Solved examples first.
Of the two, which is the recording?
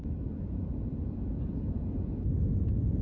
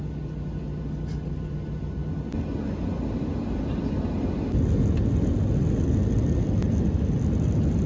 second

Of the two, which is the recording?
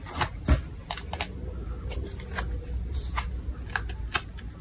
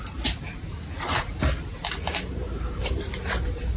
first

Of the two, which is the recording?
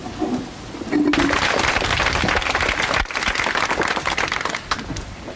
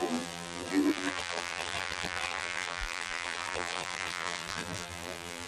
first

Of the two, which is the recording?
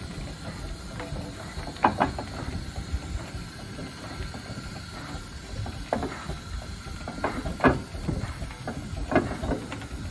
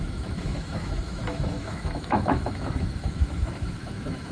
first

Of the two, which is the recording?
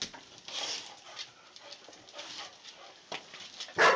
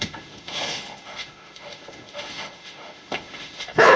first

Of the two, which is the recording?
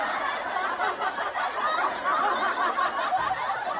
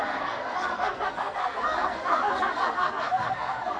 first